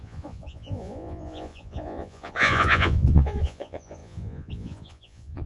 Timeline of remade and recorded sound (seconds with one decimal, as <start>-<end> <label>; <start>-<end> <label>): 0.0-5.5 remade